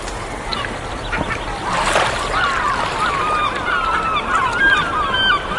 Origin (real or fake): real